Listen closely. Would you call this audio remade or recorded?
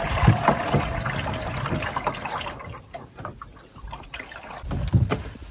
recorded